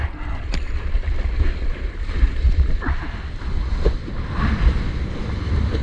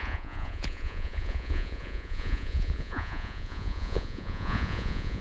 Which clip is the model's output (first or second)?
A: second